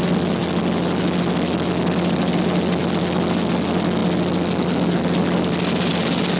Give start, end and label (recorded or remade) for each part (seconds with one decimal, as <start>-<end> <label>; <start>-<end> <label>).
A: 0.0-6.4 recorded